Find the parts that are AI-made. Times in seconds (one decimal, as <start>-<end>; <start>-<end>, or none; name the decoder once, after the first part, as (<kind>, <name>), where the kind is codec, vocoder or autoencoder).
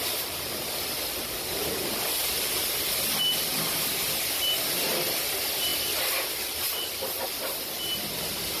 5.7-7.6 (vocoder, BigVGAN v2)